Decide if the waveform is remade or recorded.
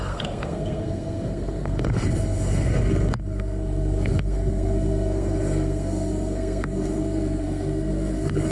remade